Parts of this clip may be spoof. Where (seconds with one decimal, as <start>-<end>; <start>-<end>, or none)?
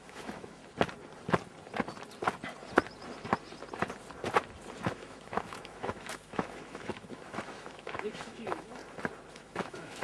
0.0-0.6; 4.9-8.8; 9.3-10.0